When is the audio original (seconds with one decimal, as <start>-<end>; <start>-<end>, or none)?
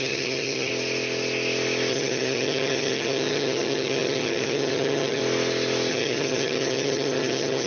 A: 0.7-1.9; 5.2-5.9